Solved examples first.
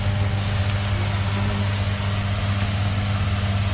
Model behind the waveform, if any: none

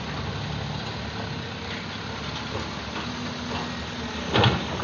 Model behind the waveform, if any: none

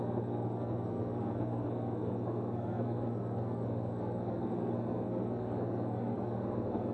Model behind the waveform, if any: codec, SNAC